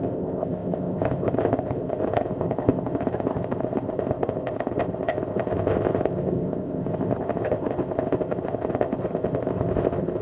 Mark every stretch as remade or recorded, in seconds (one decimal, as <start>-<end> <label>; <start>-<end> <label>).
0.0-10.2 remade